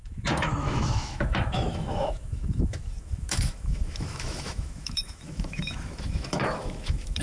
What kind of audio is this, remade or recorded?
remade